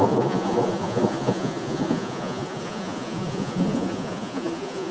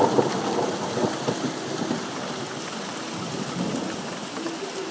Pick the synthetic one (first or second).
first